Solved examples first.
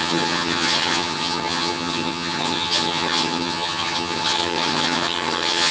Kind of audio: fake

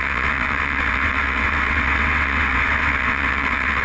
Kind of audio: fake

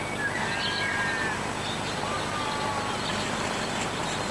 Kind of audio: real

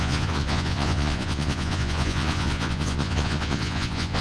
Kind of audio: fake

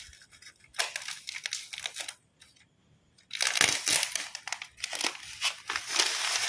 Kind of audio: real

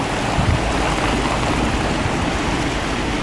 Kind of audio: real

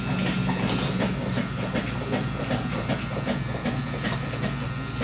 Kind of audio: real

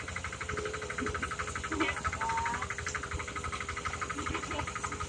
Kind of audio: real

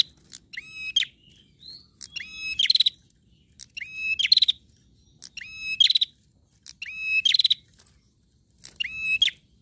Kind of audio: real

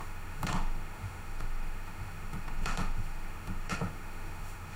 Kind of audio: fake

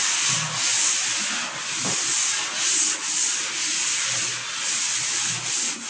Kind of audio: real